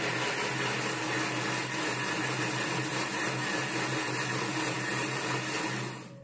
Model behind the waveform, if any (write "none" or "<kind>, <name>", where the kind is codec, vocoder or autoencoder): none